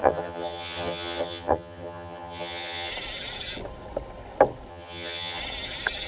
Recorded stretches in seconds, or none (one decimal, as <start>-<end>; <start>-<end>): 2.9-4.7; 5.4-6.1